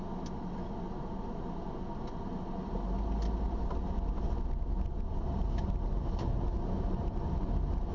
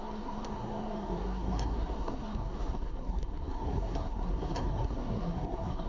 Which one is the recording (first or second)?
first